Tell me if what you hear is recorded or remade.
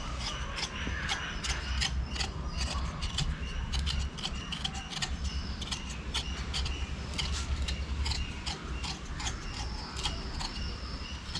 recorded